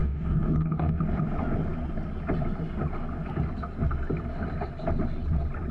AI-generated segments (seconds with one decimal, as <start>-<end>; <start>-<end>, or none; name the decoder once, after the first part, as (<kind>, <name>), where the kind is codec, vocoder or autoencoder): 0.0-1.0 (codec, DAC)